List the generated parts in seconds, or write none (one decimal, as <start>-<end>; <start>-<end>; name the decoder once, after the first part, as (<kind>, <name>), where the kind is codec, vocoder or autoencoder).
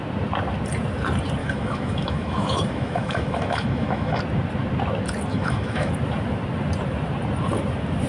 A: 1.4-4.2 (autoencoder, DAC-VAE); 5.3-5.9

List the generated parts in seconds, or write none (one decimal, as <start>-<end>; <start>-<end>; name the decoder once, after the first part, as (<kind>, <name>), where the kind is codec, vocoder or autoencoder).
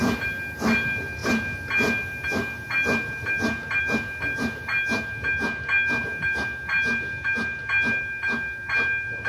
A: none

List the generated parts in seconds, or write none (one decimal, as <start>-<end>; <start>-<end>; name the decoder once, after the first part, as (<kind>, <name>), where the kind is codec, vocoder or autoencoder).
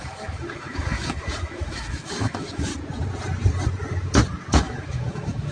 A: 0.0-2.7 (autoencoder, DAC-VAE); 4.5-5.5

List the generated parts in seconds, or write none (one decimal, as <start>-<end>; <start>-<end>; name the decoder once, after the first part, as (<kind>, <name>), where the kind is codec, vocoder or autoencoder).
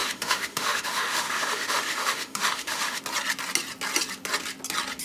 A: 0.0-3.0 (autoencoder, DAC-VAE)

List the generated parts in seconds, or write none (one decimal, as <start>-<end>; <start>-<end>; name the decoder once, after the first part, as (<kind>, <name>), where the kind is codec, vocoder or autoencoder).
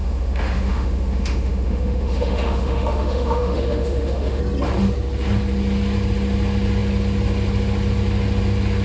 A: 0.0-4.4 (autoencoder, DAC-VAE)